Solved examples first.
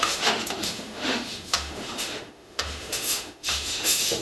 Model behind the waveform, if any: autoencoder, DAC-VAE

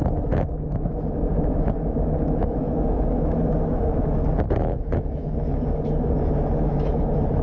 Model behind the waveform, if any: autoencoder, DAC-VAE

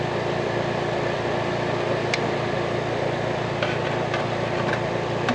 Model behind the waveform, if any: none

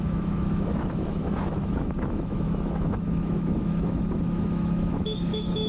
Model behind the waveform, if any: autoencoder, DAC-VAE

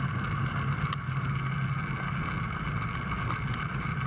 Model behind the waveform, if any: none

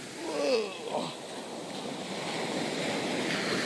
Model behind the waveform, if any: none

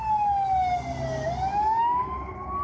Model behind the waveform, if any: none